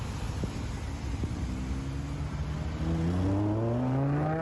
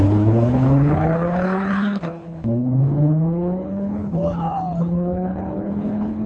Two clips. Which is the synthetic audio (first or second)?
second